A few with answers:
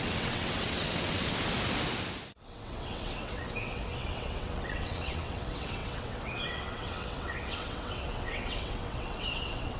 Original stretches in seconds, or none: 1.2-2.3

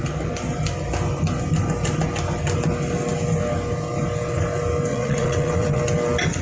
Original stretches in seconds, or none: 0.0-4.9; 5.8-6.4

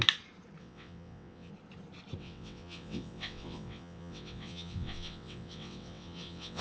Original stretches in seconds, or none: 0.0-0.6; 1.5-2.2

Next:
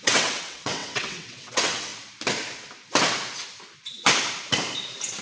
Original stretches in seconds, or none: 1.9-5.2

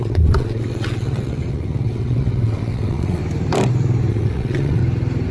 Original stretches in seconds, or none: 3.2-4.1; 4.8-5.3